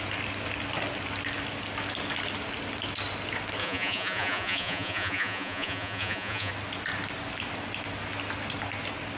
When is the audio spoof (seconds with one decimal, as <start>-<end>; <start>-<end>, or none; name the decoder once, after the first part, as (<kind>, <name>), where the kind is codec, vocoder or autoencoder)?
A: 3.6-6.5 (vocoder, Vocos)